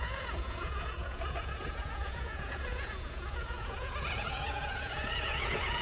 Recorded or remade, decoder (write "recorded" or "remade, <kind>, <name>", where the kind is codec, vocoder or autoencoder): remade, vocoder, Vocos